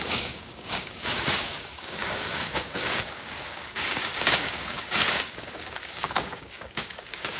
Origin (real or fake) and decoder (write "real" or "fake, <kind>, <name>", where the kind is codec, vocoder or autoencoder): fake, codec, DAC